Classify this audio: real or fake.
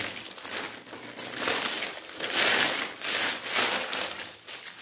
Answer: real